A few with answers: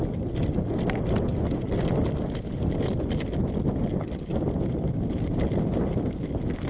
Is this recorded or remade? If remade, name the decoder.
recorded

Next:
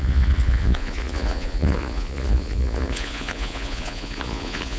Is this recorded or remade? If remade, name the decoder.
remade, vocoder, Vocos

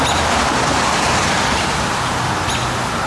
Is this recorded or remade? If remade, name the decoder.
remade, vocoder, BigVGAN v2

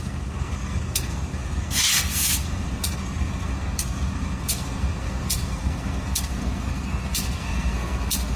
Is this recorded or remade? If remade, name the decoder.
remade, codec, SNAC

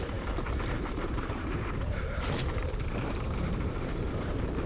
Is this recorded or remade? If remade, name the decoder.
remade, vocoder, BigVGAN v2